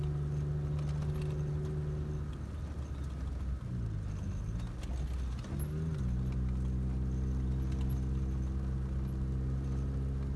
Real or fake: real